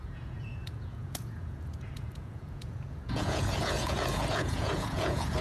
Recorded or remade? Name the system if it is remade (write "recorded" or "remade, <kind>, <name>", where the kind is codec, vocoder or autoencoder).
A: remade, vocoder, Vocos